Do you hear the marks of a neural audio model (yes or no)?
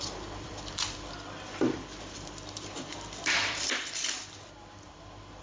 yes